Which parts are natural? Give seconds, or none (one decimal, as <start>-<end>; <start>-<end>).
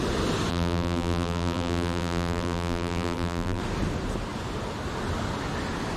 0.0-0.5; 3.6-6.0